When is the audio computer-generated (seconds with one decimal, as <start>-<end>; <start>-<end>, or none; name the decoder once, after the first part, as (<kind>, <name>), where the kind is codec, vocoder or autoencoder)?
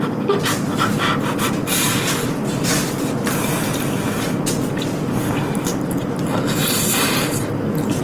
2.5-4.5 (vocoder, BigVGAN v2)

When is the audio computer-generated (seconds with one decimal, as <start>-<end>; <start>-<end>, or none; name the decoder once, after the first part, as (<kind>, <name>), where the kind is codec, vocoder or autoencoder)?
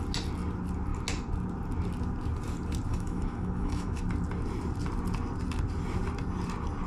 2.9-4.0 (autoencoder, DAC-VAE)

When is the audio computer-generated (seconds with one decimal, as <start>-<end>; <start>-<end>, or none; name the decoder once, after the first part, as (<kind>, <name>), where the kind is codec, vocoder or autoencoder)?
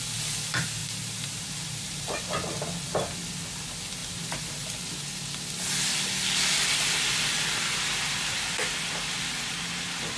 0.8-2.2 (vocoder, BigVGAN v2); 4.0-4.6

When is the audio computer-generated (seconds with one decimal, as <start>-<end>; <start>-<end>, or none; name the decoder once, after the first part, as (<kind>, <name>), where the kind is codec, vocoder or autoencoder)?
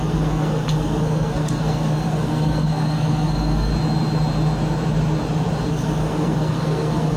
0.0-3.7 (codec, SNAC); 5.7-7.2